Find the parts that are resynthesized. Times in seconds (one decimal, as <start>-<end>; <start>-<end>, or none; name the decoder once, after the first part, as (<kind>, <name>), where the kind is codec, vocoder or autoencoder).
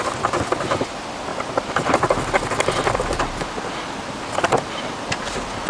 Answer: none